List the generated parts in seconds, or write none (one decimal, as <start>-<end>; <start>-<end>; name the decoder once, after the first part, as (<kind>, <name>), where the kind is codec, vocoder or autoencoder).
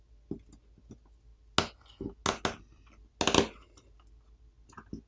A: none